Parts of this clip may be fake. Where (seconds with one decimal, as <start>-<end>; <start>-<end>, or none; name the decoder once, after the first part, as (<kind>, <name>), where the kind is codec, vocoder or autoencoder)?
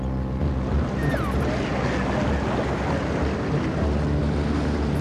none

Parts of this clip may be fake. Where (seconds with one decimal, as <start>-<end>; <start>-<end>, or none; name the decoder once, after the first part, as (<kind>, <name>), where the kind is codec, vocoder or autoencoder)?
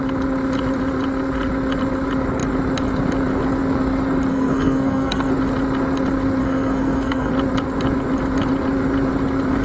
4.3-5.3 (codec, SNAC); 6.4-7.3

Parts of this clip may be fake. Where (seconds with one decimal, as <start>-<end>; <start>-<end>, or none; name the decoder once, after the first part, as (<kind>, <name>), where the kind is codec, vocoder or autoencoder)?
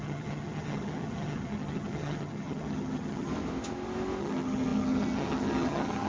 0.0-3.3 (vocoder, HiFi-GAN); 4.2-6.1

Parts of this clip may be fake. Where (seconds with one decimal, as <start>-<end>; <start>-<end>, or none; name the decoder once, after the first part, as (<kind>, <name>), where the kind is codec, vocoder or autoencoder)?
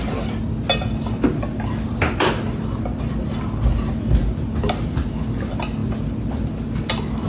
none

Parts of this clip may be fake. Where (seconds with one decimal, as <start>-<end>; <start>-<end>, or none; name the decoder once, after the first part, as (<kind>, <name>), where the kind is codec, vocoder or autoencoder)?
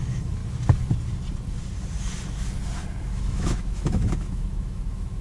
0.0-0.4 (autoencoder, DAC-VAE); 3.0-5.2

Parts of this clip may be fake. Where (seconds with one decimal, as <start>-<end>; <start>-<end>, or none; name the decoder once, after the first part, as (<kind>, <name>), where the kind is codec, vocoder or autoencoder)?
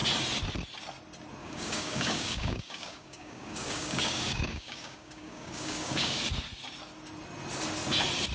1.4-6.2 (codec, DAC)